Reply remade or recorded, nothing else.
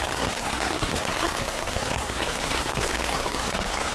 remade